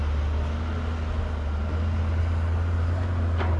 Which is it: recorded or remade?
recorded